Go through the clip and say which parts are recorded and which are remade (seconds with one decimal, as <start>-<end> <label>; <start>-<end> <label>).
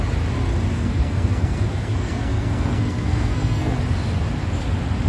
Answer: 0.0-0.7 recorded; 0.7-3.8 remade; 3.8-5.1 recorded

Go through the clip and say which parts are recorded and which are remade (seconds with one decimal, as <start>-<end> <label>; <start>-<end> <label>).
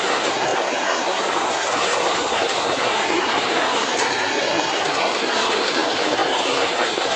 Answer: 0.0-7.2 remade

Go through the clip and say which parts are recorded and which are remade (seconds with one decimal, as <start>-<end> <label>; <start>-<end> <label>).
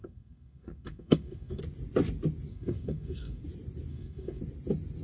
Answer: 0.0-1.6 remade; 1.6-2.5 recorded; 2.5-3.4 remade; 3.4-3.9 recorded; 3.9-4.4 remade; 4.4-5.0 recorded